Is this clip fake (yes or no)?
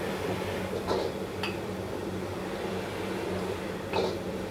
yes